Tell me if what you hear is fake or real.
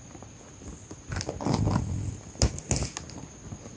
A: real